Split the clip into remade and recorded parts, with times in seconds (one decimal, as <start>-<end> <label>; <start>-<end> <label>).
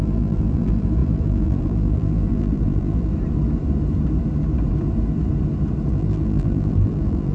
0.0-3.1 remade; 3.1-5.9 recorded; 5.9-7.3 remade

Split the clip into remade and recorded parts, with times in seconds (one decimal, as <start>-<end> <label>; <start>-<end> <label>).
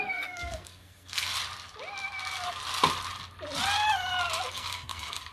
0.0-1.3 remade; 1.3-4.5 recorded; 4.5-5.3 remade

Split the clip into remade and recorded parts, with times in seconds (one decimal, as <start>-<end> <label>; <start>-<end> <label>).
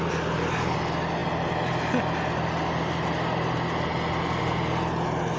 0.0-5.4 recorded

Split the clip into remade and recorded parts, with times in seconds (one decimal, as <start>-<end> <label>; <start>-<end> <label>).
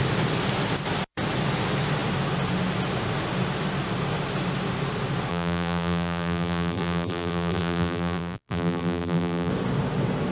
0.0-5.3 recorded; 5.3-9.5 remade; 9.5-10.3 recorded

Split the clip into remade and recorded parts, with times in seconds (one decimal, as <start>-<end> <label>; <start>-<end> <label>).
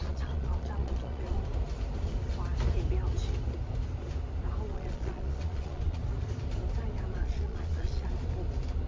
0.0-1.4 remade; 1.4-4.7 recorded; 4.7-6.0 remade; 6.0-7.2 recorded; 7.2-8.1 remade; 8.1-8.9 recorded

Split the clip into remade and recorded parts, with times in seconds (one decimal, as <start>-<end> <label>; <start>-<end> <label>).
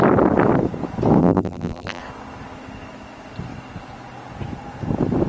0.0-1.2 recorded; 1.2-2.0 remade; 2.0-5.3 recorded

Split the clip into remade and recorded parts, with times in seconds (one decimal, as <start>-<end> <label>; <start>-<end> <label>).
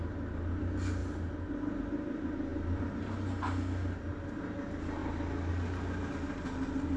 0.0-7.0 recorded